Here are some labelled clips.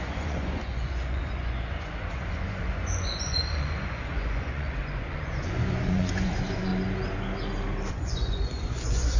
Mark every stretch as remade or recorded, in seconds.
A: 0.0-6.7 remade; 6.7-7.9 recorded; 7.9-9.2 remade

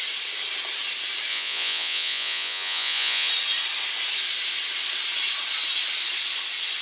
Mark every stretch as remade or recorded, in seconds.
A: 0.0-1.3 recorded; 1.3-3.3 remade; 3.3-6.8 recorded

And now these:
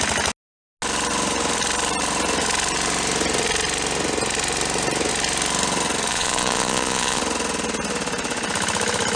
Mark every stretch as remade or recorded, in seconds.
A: 0.0-6.1 recorded; 6.1-7.2 remade; 7.2-9.2 recorded

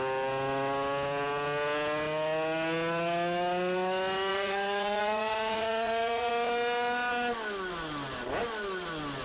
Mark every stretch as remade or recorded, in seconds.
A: 0.0-4.3 recorded; 4.3-6.3 remade; 6.3-9.2 recorded

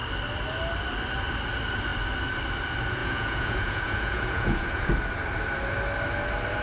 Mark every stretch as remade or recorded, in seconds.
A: 0.0-3.0 recorded; 3.0-4.9 remade; 4.9-6.6 recorded

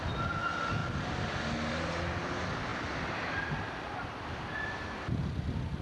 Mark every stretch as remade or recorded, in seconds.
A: 0.0-5.8 recorded